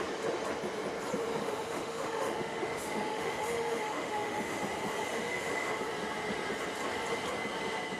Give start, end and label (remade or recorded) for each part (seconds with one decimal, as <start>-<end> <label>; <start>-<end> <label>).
0.0-1.4 recorded; 1.4-4.6 remade; 4.6-5.1 recorded; 5.1-5.8 remade; 5.8-8.0 recorded